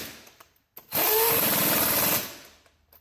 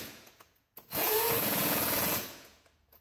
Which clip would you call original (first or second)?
first